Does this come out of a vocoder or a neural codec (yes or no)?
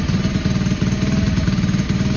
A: no